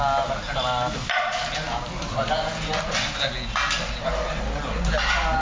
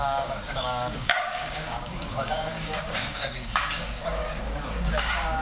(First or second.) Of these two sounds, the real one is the first